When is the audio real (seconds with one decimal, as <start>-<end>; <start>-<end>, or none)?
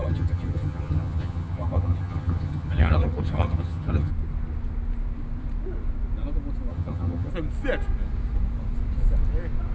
4.1-6.7; 7.3-9.7